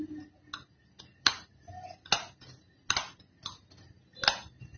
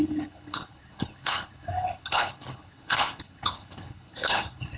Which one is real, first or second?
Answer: first